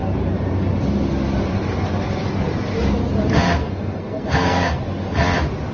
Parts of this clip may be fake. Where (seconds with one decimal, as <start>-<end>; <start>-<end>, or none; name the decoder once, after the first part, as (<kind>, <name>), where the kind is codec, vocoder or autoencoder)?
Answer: 3.6-4.8 (codec, SNAC)